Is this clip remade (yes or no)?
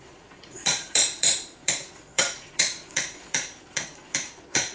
yes